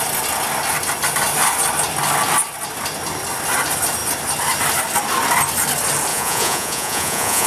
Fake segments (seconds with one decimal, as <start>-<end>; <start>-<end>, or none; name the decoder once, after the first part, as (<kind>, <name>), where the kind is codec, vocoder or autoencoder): 6.1-7.5 (vocoder, Vocos)

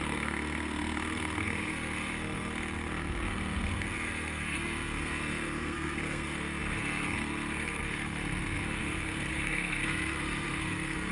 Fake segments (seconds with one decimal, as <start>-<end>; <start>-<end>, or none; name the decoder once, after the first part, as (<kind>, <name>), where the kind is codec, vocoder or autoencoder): 0.0-11.1 (codec, SNAC)

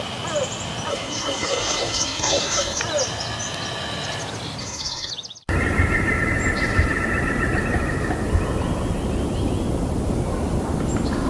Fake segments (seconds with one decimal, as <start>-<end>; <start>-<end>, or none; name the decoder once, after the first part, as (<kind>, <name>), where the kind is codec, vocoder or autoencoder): 0.9-2.8 (codec, SNAC); 4.6-5.1

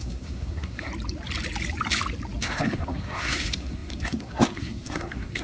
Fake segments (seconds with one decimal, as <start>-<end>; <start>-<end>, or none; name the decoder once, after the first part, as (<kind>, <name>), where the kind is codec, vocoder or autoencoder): 0.0-0.9 (codec, SNAC); 2.4-5.4

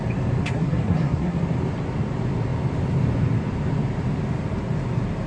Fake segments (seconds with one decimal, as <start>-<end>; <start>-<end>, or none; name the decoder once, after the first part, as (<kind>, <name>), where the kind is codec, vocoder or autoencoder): 0.4-1.4 (codec, SNAC)

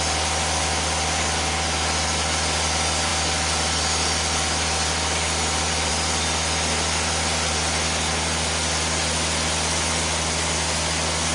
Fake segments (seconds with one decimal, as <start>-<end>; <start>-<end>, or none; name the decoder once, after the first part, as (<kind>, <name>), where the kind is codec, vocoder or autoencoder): none

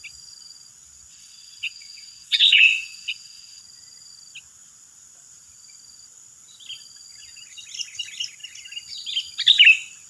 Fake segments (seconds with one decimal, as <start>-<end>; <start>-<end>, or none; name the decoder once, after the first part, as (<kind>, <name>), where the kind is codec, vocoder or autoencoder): 1.1-3.6 (vocoder, WaveNeXt)